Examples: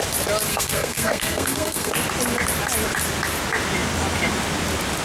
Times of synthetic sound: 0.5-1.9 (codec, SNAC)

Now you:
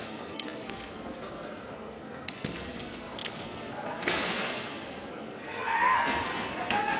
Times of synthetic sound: 0.0-7.0 (codec, SNAC)

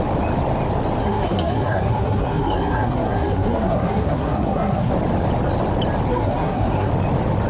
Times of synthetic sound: 1.0-4.9 (codec, SNAC); 6.1-6.9

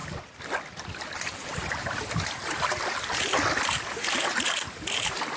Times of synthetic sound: none

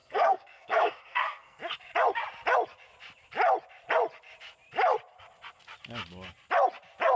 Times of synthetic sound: 0.0-1.6 (codec, SNAC)

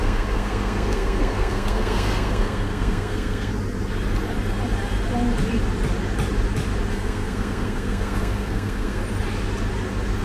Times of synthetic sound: 0.0-3.5 (codec, SNAC); 6.9-9.0

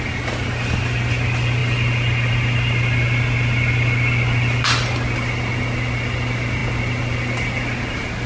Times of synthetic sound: none